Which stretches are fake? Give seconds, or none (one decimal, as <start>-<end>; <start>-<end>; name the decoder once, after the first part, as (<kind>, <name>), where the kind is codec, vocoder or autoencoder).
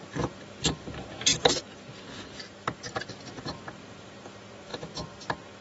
none